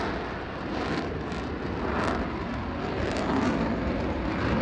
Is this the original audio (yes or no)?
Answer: yes